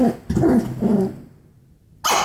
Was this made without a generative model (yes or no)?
yes